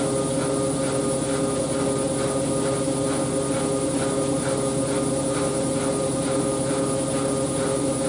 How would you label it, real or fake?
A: real